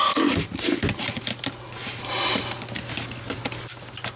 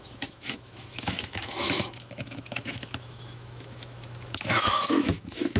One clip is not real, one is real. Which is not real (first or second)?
second